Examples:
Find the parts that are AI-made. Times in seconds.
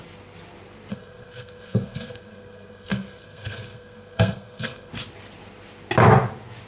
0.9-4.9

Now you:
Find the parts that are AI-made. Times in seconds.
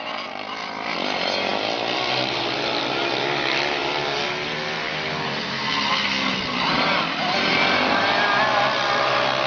none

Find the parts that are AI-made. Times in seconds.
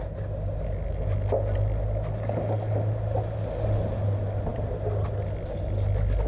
none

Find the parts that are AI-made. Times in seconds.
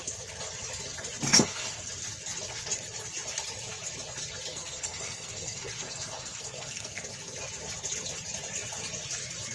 1.3-1.9; 4.5-7.0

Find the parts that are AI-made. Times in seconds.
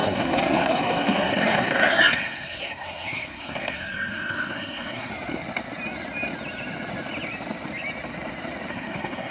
0.0-5.1; 8.7-9.3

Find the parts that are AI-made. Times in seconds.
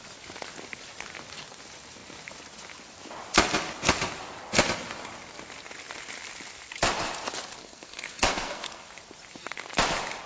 7.6-8.9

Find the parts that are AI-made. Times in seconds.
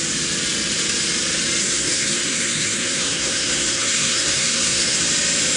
1.6-5.0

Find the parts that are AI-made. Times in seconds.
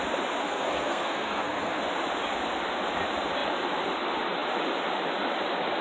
0.4-1.8